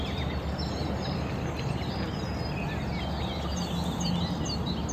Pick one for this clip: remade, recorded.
recorded